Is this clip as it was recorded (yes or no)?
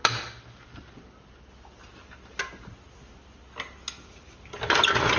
yes